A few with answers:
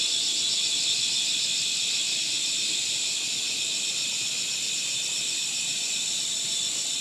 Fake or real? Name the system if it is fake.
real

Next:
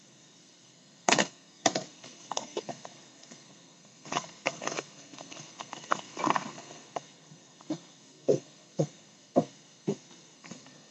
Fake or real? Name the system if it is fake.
fake, codec, SNAC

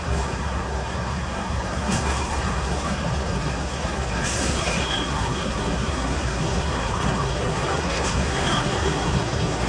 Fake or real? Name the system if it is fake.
fake, codec, SNAC